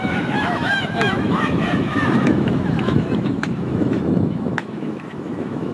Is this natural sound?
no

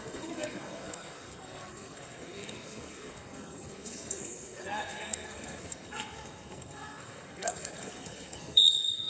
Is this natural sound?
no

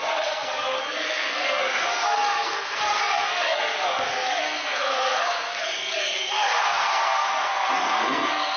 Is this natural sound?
no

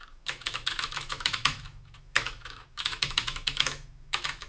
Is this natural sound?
no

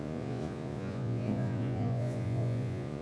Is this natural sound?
no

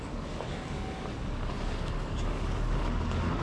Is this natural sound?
no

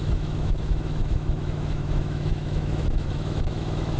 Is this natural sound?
no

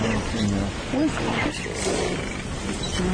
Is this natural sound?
yes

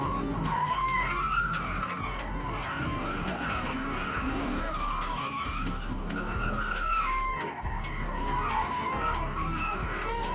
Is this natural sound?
no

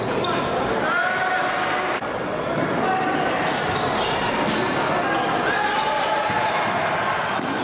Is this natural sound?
yes